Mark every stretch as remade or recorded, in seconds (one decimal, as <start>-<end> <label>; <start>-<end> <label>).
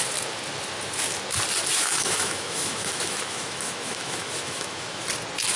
0.0-1.7 recorded; 1.7-5.1 remade; 5.1-5.6 recorded